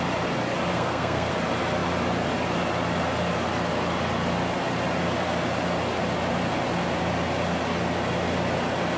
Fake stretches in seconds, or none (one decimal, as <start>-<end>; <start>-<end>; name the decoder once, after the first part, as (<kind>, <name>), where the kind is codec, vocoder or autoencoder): 0.7-1.3 (codec, SNAC)